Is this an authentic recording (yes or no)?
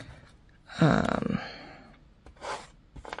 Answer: yes